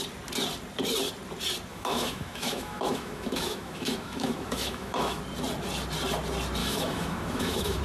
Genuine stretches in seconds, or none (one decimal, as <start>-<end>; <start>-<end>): 0.0-1.7; 5.2-6.6